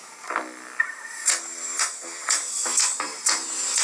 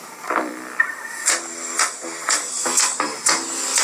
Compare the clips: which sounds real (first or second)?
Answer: first